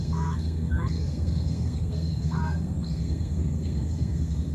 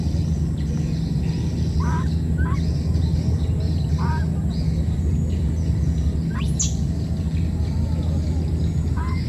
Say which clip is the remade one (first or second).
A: first